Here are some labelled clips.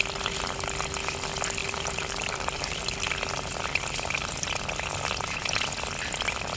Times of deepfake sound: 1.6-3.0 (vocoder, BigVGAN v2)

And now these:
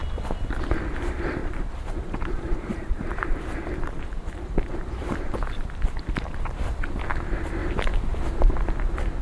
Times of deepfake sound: 1.4-6.6 (vocoder, BigVGAN v2); 7.6-8.5

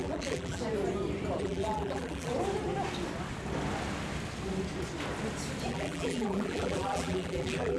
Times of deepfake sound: 0.0-0.6 (vocoder, BigVGAN v2); 1.4-2.3; 5.7-7.8